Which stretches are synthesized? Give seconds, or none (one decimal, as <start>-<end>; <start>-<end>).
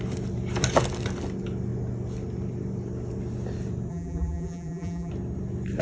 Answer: 3.9-5.1